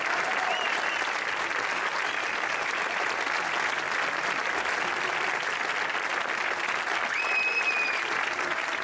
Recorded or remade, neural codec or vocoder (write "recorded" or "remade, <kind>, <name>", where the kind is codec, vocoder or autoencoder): recorded